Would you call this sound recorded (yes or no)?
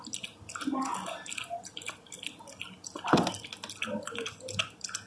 yes